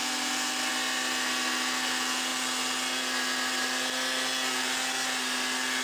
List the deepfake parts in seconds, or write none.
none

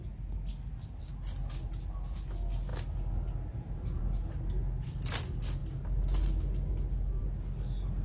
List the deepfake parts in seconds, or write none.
none